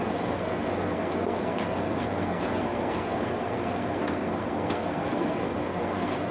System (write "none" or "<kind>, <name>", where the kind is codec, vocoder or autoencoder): codec, SNAC